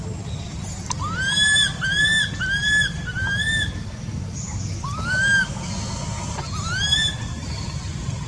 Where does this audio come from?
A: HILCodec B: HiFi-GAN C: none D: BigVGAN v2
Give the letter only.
C